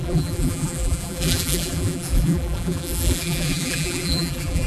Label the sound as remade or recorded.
remade